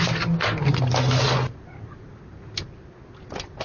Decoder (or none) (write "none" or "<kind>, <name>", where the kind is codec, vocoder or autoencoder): none